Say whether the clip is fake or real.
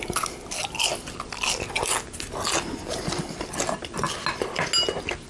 real